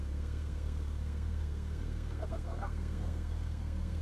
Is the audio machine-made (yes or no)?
yes